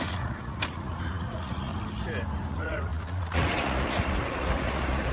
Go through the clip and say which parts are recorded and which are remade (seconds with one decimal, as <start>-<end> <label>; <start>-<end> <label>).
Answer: 0.0-1.7 remade; 1.7-2.5 recorded; 2.5-5.1 remade

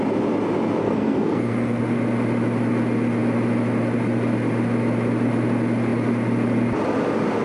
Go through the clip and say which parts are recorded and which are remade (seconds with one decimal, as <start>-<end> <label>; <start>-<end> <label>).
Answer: 0.0-0.8 recorded; 0.8-1.8 remade; 1.8-7.4 recorded

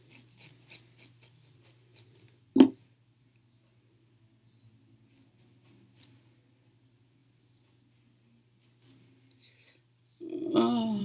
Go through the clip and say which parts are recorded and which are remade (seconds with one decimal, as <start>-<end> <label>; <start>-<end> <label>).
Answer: 0.0-11.0 recorded